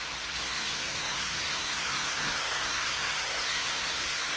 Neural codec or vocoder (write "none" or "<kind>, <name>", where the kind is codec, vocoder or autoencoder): codec, SNAC